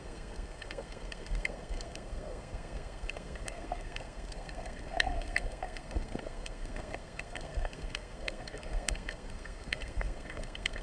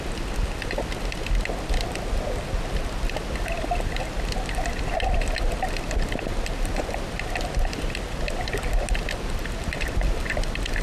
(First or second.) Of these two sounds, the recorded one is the second